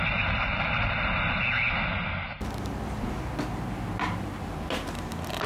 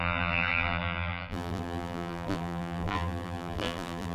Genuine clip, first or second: first